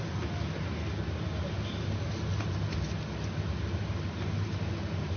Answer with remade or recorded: recorded